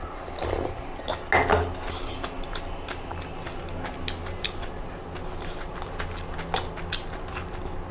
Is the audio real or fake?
real